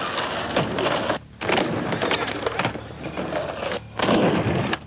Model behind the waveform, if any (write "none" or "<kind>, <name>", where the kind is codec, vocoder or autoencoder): none